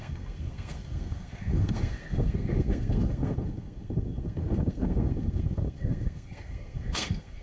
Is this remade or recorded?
remade